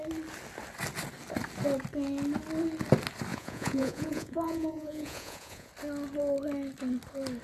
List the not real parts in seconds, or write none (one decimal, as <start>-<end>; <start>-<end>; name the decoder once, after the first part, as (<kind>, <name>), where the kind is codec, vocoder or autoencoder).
3.3-5.7 (vocoder, Vocos)